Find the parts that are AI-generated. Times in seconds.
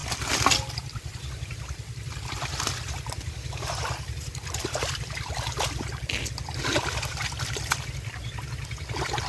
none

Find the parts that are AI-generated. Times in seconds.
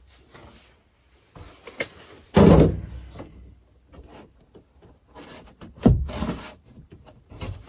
0.0-0.4 (vocoder, BigVGAN v2); 4.9-7.7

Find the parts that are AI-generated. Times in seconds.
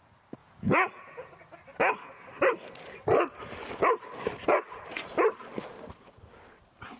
0.4-1.3 (vocoder, Vocos)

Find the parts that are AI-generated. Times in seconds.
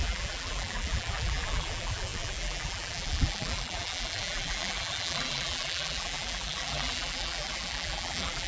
0.0-8.5 (vocoder, BigVGAN v2)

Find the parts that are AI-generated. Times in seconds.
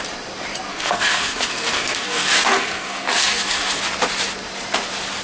0.7-3.8 (codec, SNAC)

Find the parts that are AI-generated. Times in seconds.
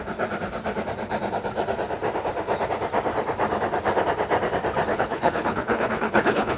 4.9-6.6 (codec, HILCodec)